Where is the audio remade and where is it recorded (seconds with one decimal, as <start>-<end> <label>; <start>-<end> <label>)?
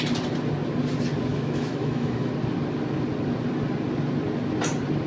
0.0-1.3 recorded; 1.3-2.3 remade; 2.3-5.1 recorded